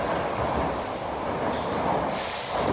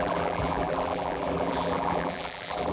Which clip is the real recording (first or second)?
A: first